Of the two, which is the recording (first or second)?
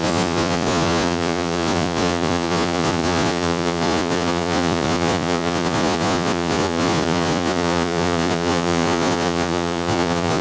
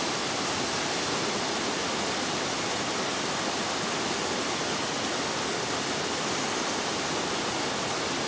second